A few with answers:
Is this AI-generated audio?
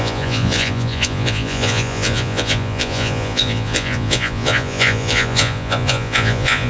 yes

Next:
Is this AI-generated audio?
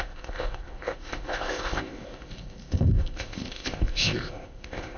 yes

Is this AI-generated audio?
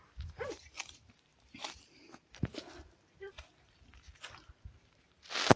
yes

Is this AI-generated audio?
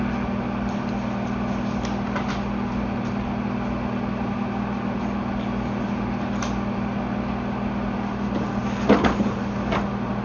no